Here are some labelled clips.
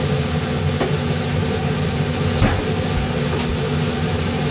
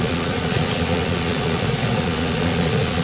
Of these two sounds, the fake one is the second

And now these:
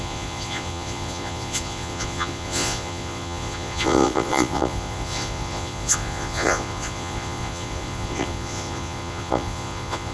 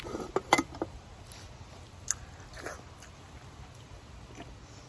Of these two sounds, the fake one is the first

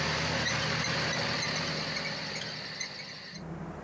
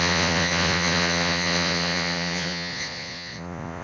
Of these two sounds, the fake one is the second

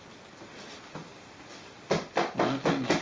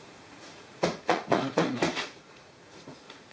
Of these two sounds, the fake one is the second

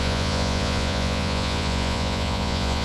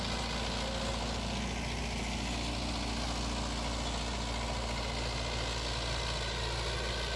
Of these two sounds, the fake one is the first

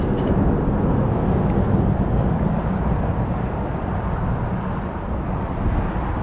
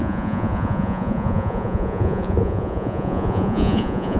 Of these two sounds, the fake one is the second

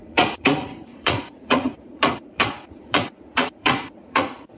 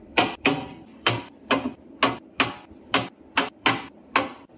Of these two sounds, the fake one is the first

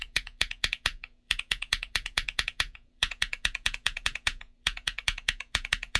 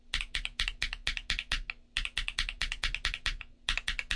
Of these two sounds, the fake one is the first